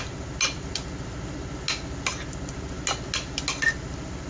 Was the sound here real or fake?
real